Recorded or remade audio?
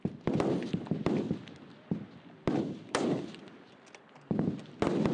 recorded